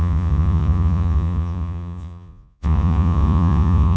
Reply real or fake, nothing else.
fake